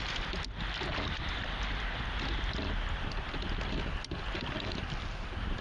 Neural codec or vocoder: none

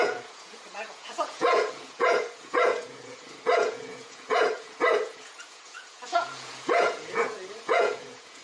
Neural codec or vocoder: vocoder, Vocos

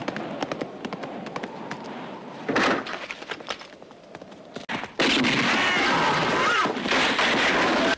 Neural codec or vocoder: none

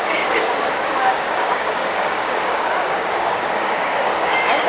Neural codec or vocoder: codec, DAC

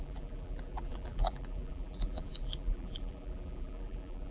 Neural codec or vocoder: vocoder, BigVGAN v2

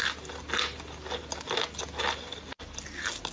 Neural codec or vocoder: none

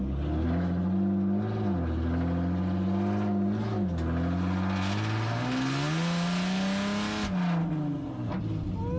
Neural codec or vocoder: none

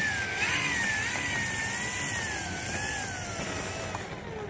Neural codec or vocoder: none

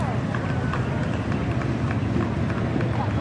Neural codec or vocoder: none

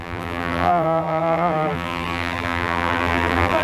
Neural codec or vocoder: vocoder, BigVGAN v2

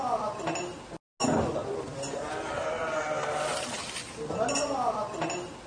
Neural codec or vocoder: none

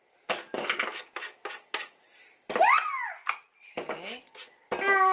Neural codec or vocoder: none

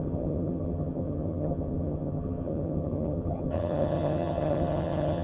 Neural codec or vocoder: vocoder, HiFi-GAN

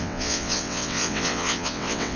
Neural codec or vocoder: vocoder, WaveNeXt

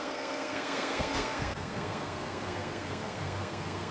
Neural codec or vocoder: codec, SNAC